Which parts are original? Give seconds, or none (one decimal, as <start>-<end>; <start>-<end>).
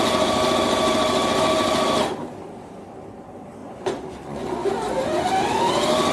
0.0-3.6; 4.7-6.1